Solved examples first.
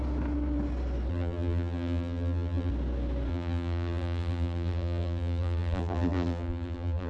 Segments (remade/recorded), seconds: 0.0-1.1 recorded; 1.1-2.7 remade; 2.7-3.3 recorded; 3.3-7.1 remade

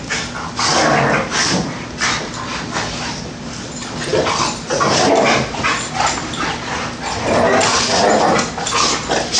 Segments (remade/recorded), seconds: 0.0-9.4 recorded

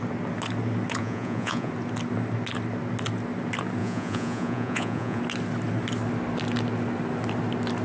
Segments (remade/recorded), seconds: 0.0-1.0 recorded; 1.0-1.7 remade; 1.7-3.8 recorded; 3.8-5.2 remade; 5.2-7.8 recorded

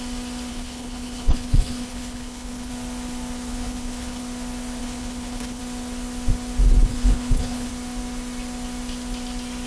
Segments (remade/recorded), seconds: 0.0-0.5 recorded; 0.5-2.7 remade; 2.7-3.5 recorded; 3.5-4.2 remade; 4.2-4.8 recorded; 4.8-5.6 remade; 5.6-6.9 recorded; 6.9-7.7 remade; 7.7-9.7 recorded

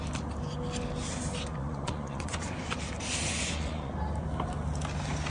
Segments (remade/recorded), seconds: 0.0-1.5 recorded; 1.5-2.7 remade; 2.7-3.3 recorded; 3.3-3.9 remade; 3.9-5.3 recorded

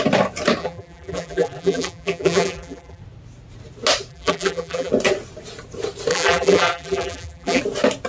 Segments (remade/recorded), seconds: 0.0-0.6 recorded; 0.6-3.0 remade; 3.0-4.1 recorded; 4.1-4.9 remade; 4.9-6.1 recorded; 6.1-7.6 remade; 7.6-8.1 recorded